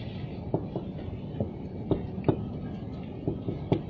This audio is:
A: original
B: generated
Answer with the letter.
A